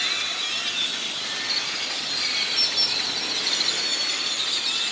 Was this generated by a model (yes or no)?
no